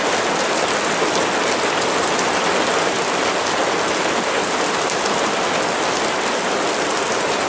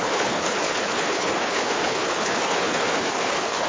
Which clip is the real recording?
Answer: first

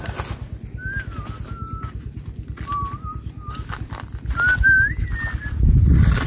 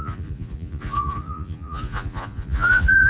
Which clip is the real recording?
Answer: first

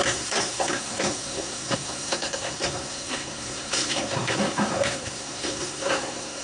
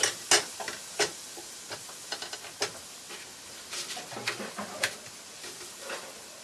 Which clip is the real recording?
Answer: second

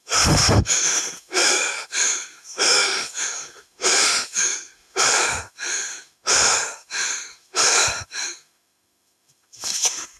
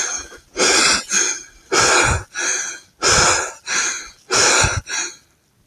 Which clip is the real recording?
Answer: second